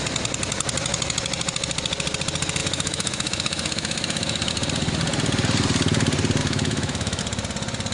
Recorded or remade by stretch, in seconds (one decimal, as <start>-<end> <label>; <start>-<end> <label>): 0.0-2.6 recorded; 2.6-4.5 remade; 4.5-6.4 recorded; 6.4-7.2 remade; 7.2-7.9 recorded